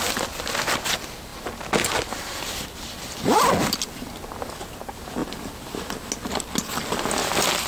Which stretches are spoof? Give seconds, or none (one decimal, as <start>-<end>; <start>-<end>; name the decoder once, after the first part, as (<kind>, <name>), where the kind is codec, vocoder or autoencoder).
none